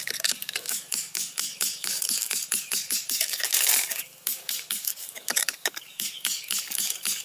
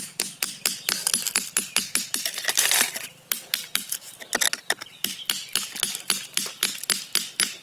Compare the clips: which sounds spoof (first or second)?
first